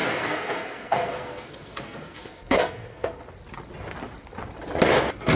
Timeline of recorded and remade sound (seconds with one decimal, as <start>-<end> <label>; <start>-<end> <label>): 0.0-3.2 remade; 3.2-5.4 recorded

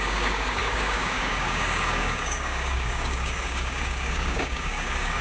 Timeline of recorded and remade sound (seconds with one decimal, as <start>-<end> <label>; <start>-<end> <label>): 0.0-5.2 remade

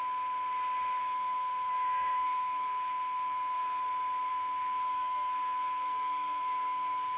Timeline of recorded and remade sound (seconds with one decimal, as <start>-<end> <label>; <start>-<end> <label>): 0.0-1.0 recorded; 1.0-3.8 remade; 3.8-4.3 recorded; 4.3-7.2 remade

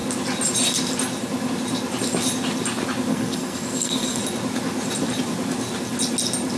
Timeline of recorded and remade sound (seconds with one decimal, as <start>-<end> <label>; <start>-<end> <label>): 0.0-3.1 recorded; 3.1-4.2 remade; 4.2-6.6 recorded

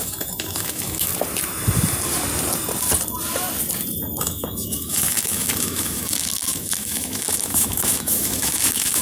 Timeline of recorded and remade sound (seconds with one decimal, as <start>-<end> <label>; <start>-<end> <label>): 0.0-1.1 remade; 1.1-4.2 recorded; 4.2-9.0 remade